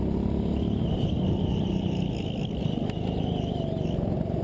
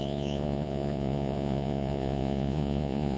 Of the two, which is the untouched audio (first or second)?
first